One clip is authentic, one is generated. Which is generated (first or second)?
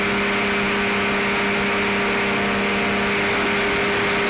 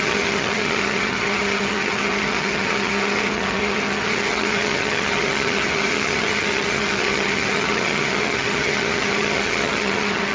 second